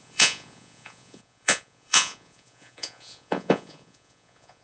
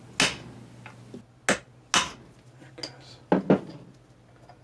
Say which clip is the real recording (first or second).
second